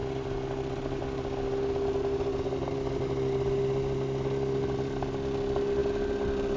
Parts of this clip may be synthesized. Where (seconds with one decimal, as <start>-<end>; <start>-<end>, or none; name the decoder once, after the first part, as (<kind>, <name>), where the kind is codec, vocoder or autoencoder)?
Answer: none